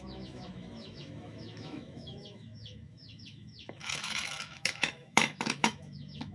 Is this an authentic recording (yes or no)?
no